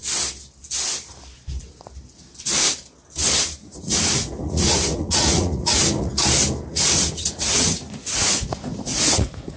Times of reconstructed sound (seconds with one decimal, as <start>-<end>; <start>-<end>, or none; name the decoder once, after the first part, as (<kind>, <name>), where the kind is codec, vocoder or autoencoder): 3.6-6.1 (vocoder, Vocos); 6.7-9.6